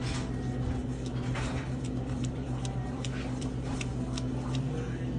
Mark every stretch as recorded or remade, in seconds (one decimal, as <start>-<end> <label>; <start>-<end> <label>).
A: 0.0-0.8 recorded; 0.8-3.9 remade; 3.9-5.2 recorded